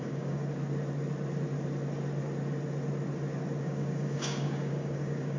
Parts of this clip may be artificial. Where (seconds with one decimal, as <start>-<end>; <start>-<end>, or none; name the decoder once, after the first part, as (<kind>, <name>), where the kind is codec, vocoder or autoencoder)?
0.0-0.4 (codec, DAC); 3.6-5.4